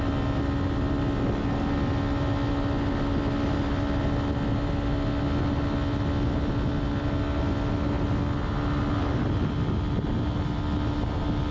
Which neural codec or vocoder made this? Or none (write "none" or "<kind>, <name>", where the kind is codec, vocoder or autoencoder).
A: none